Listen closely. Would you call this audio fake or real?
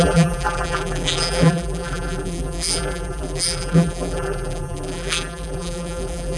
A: fake